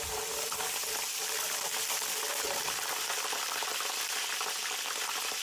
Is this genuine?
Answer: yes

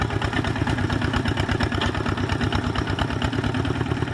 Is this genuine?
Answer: yes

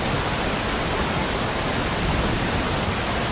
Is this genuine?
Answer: yes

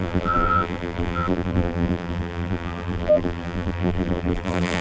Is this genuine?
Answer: no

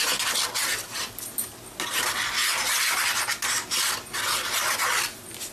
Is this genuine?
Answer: yes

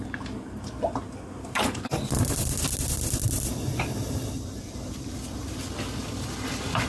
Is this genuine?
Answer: yes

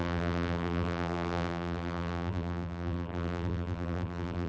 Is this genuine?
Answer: no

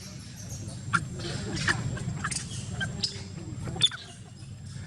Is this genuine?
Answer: yes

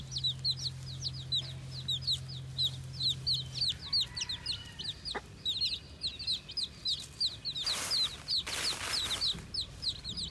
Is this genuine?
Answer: yes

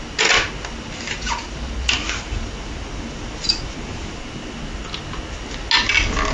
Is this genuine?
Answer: yes